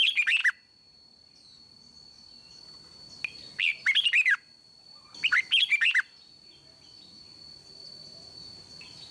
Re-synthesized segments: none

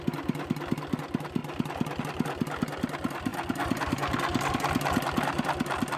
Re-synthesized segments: none